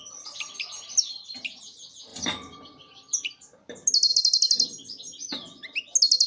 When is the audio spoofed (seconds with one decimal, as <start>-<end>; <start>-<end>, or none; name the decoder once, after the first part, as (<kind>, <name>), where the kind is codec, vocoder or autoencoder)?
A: none